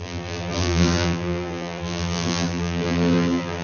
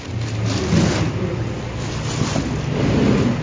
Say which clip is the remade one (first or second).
first